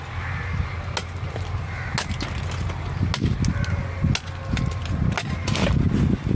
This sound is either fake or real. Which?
real